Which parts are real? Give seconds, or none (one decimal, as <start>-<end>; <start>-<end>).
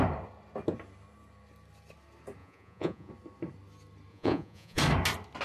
0.0-2.4; 3.1-4.1; 4.8-5.4